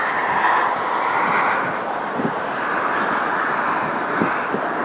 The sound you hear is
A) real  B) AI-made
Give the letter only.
A